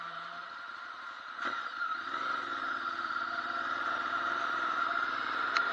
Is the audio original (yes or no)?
no